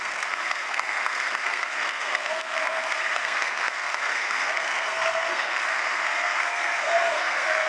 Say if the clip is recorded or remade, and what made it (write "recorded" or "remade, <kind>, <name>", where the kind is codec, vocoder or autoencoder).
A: remade, codec, SNAC